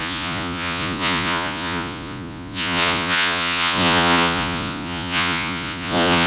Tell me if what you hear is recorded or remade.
remade